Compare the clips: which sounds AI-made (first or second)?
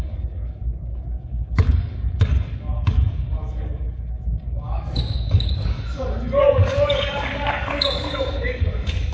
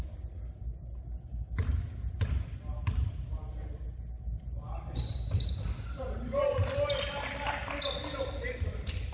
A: first